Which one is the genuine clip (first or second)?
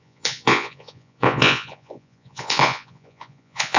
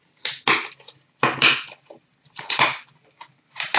second